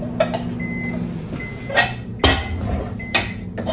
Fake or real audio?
real